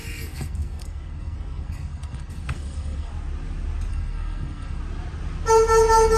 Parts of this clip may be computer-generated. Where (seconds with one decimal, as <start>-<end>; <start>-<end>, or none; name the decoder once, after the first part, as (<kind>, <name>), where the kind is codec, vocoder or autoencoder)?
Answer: 0.0-3.1 (codec, SNAC); 3.9-4.8